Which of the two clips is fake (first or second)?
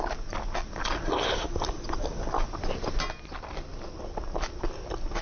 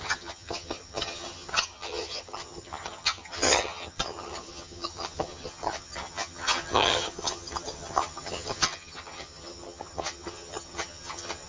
second